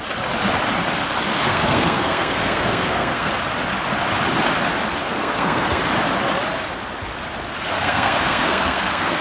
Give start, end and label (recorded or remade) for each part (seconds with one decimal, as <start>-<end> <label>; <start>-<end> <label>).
0.0-1.5 recorded; 1.5-3.3 remade; 3.3-5.0 recorded; 5.0-5.8 remade; 5.8-7.7 recorded; 7.7-9.2 remade